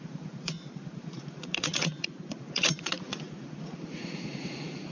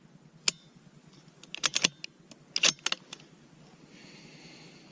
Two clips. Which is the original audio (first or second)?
second